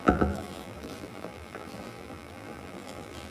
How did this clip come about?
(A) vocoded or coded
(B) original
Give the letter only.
A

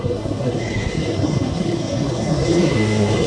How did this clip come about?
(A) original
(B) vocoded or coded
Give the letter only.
B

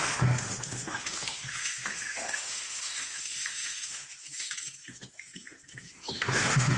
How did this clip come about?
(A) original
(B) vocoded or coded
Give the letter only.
B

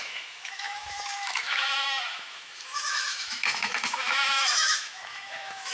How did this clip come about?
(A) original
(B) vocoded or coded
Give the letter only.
B